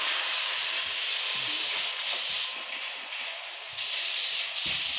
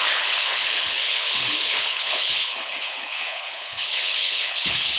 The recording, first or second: first